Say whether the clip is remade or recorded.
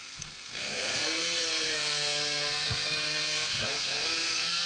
remade